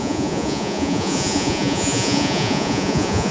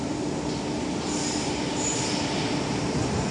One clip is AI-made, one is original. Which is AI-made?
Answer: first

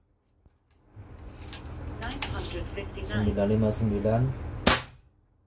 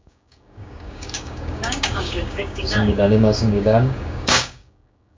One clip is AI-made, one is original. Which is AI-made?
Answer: second